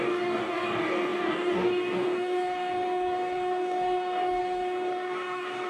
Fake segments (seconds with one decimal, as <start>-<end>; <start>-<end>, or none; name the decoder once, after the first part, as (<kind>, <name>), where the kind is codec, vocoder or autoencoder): 0.0-5.7 (codec, DAC)